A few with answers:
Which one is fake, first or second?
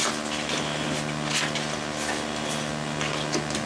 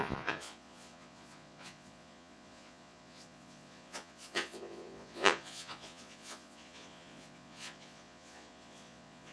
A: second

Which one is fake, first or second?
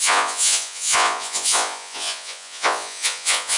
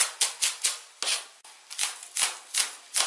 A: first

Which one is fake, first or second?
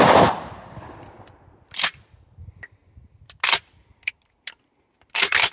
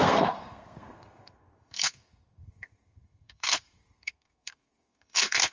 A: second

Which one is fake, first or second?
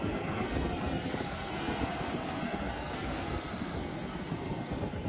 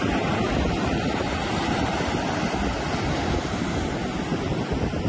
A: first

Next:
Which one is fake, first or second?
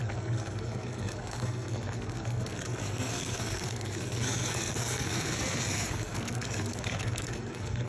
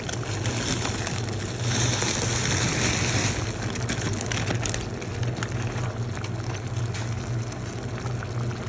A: first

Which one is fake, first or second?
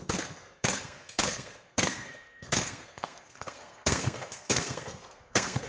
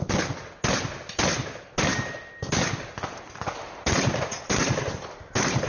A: first